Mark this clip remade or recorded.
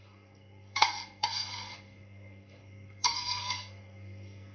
remade